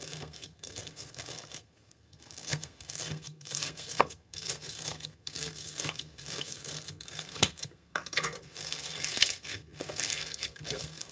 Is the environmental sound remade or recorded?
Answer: remade